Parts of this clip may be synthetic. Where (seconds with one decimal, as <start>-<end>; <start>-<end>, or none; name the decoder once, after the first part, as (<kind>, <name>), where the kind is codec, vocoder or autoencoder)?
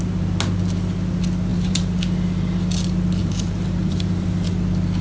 1.5-2.0 (vocoder, BigVGAN v2); 3.2-4.5